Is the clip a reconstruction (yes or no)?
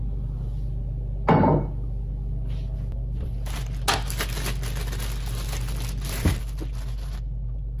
no